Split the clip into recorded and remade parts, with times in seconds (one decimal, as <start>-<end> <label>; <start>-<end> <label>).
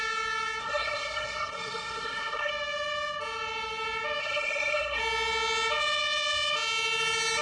0.0-0.6 recorded; 0.6-2.5 remade; 2.5-4.2 recorded; 4.2-5.0 remade; 5.0-7.4 recorded